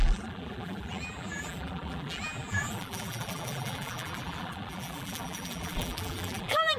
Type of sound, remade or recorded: remade